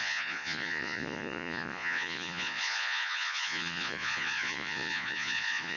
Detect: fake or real fake